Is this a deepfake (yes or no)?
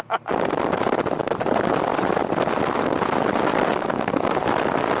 no